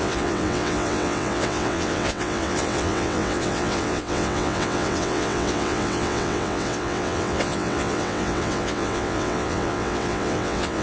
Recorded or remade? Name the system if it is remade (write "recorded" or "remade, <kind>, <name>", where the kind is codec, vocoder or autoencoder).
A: remade, vocoder, WaveNeXt